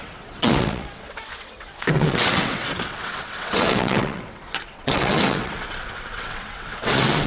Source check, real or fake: fake